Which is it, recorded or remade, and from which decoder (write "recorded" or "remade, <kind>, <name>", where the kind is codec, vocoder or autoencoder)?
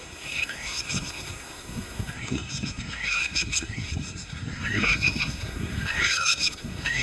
remade, codec, SNAC